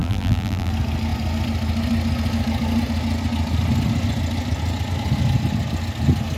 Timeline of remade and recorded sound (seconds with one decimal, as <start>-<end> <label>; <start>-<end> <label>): 0.0-0.7 remade; 0.7-6.4 recorded